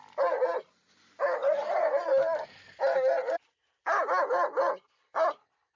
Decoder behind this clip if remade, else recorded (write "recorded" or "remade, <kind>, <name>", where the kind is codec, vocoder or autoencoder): recorded